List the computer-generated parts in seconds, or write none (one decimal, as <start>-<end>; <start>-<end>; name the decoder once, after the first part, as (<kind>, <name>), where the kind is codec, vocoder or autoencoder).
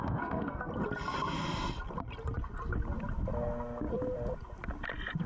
0.0-0.7 (codec, SNAC)